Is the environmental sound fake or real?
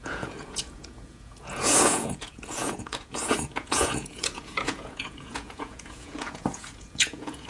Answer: fake